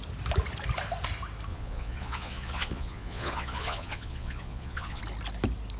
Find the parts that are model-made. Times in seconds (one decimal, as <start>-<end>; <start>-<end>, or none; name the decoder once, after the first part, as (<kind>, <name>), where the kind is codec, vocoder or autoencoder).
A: 1.5-5.0 (vocoder, Vocos)